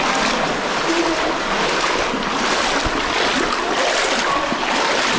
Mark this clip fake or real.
real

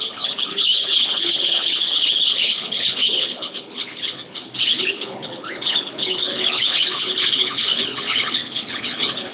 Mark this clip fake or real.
fake